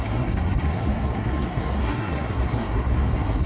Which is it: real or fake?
fake